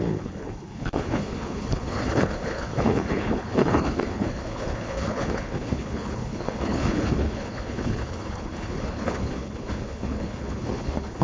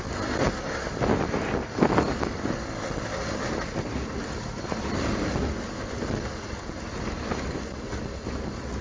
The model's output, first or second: first